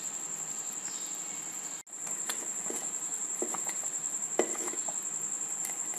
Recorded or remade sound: recorded